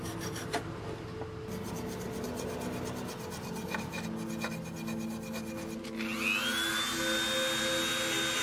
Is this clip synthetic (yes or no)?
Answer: no